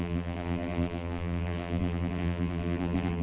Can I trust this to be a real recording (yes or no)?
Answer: no